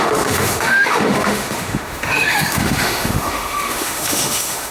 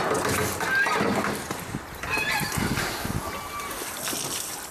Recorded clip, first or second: second